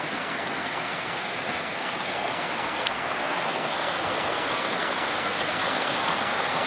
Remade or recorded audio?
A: remade